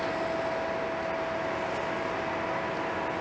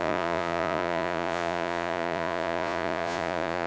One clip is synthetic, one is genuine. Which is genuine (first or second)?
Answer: first